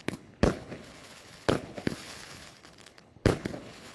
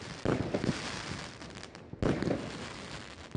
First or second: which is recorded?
second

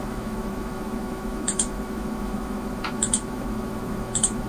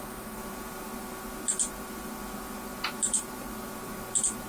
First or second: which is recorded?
second